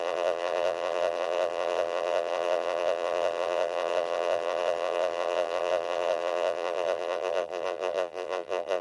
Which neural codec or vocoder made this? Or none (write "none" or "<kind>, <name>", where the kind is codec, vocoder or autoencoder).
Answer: vocoder, BigVGAN v2